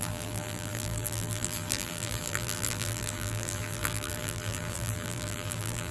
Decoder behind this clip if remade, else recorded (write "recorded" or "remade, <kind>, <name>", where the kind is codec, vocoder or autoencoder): remade, vocoder, BigVGAN v2